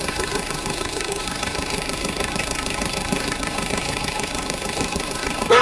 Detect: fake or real fake